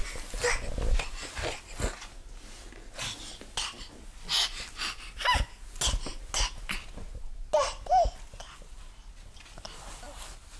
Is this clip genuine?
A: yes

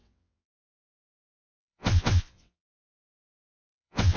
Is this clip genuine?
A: no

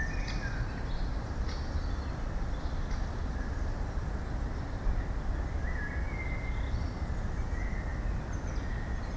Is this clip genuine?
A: yes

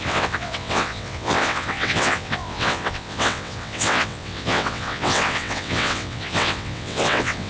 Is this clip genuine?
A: no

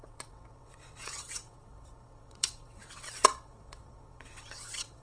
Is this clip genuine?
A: no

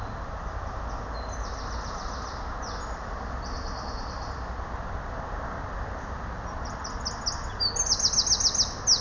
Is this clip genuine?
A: yes